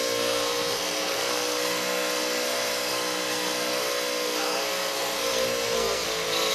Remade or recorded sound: remade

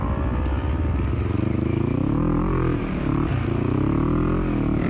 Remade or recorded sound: recorded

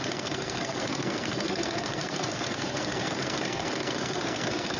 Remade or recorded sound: remade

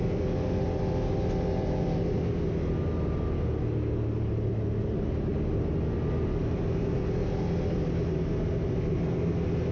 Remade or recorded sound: recorded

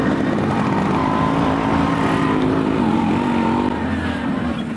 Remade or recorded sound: recorded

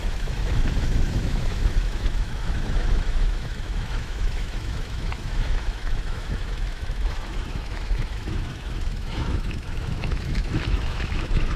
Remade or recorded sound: remade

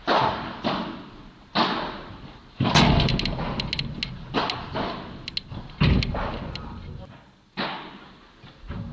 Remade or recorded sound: recorded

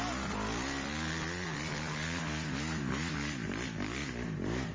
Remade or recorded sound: recorded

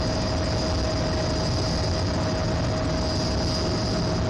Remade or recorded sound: recorded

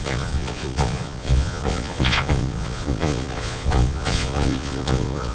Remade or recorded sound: remade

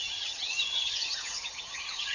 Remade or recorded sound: remade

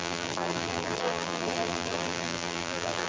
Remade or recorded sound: remade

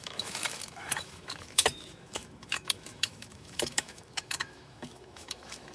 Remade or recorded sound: remade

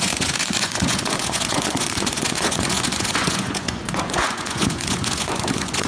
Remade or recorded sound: remade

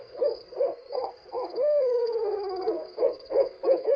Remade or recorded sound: remade